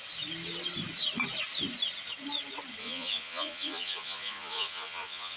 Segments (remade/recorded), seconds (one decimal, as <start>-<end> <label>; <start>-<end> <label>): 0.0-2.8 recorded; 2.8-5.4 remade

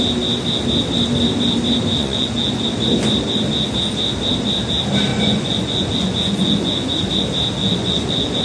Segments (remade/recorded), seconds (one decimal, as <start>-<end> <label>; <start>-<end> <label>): 0.0-1.9 recorded; 1.9-2.6 remade; 2.6-5.1 recorded; 5.1-7.1 remade; 7.1-7.6 recorded; 7.6-8.4 remade

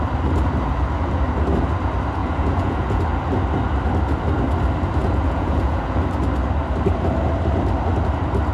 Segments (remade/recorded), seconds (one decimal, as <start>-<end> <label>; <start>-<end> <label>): 0.0-2.2 recorded; 2.2-3.0 remade; 3.0-5.0 recorded; 5.0-6.0 remade; 6.0-8.5 recorded